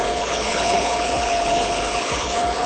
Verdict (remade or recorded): remade